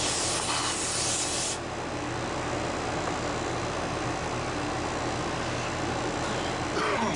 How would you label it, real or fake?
real